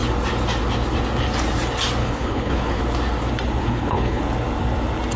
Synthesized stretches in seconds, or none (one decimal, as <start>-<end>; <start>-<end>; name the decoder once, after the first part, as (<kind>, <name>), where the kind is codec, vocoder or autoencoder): 2.0-2.8 (codec, HILCodec); 3.6-4.2